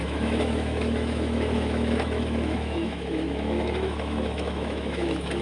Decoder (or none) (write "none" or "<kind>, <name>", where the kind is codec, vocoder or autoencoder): autoencoder, DAC-VAE